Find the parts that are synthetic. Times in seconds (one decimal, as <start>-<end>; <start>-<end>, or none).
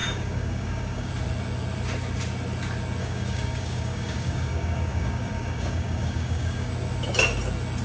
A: 0.0-1.1; 3.0-6.7